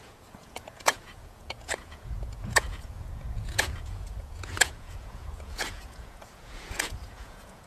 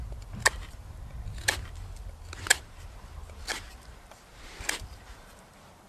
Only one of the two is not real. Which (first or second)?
first